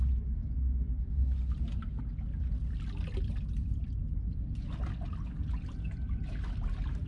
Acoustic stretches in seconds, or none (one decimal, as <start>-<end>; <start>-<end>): 0.0-7.1